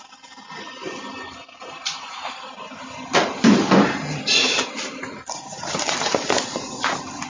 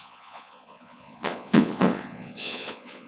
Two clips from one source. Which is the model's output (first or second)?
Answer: second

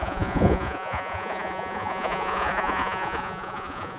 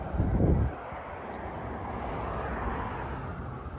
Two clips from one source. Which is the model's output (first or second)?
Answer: first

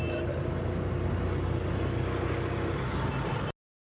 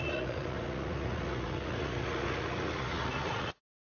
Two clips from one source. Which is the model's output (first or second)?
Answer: second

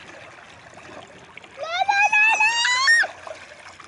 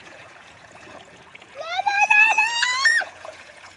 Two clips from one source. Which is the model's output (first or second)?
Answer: second